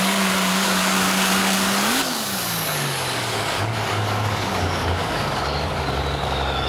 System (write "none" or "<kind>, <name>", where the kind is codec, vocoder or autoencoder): codec, DAC